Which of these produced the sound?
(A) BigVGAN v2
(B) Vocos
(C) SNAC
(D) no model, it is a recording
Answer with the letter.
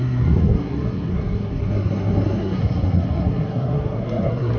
C